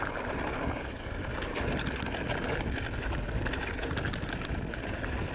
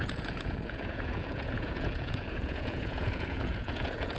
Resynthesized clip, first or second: second